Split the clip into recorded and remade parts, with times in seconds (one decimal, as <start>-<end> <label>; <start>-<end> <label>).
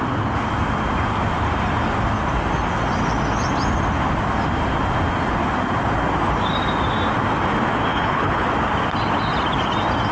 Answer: 0.0-7.9 recorded; 7.9-8.5 remade; 8.5-10.1 recorded